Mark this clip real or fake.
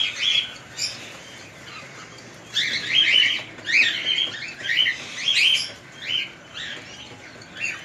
real